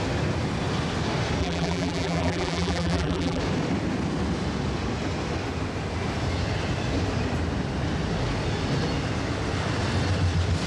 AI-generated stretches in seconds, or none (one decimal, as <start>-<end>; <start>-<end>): 1.4-3.4